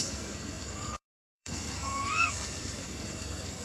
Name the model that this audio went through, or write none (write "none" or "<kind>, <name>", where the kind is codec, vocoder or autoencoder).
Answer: codec, SNAC